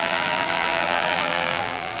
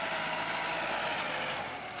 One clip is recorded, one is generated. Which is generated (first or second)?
first